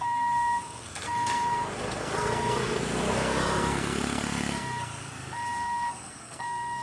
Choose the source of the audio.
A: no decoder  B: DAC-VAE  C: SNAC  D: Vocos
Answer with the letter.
C